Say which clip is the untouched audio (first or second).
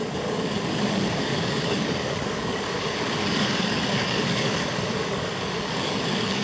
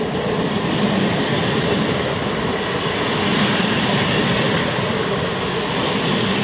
second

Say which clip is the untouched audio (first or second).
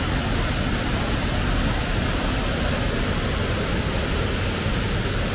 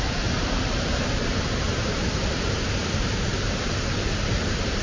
first